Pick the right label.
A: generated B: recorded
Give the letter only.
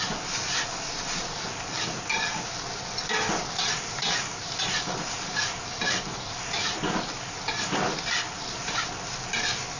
B